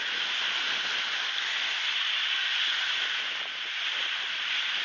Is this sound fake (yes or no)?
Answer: no